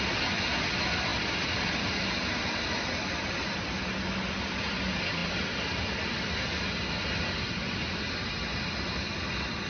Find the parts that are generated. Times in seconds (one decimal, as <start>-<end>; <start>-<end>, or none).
none